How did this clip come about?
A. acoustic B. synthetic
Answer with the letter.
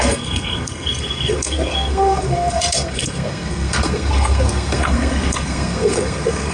B